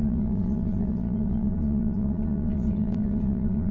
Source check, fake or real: fake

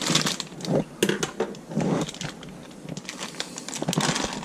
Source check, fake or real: real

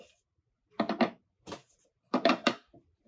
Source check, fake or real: fake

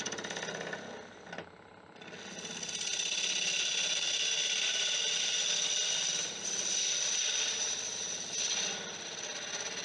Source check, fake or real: real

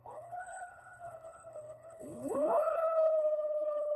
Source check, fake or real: fake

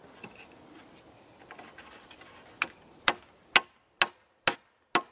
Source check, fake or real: real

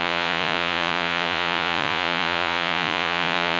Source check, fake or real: fake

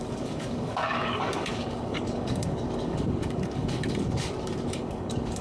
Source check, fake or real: fake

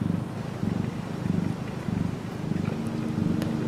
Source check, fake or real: real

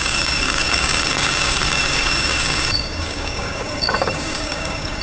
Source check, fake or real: fake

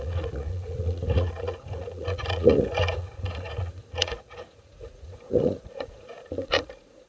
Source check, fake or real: fake